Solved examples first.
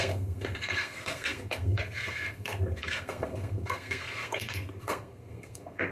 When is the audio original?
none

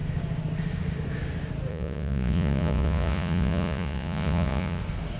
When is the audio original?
0.0-1.7; 4.8-5.2